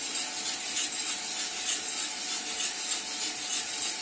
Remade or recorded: recorded